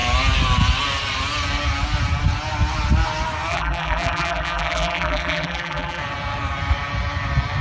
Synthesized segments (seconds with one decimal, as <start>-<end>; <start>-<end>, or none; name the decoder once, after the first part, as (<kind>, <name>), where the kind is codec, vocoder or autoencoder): 3.5-6.0 (vocoder, BigVGAN v2)